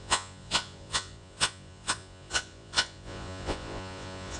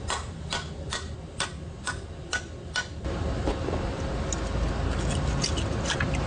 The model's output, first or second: first